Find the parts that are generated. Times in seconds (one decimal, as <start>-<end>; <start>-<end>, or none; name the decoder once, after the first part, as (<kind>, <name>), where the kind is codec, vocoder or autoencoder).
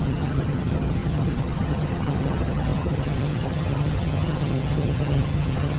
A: 0.0-5.8 (vocoder, HiFi-GAN)